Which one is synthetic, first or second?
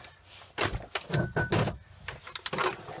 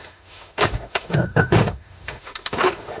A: second